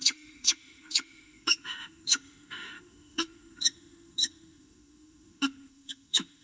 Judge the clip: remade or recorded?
remade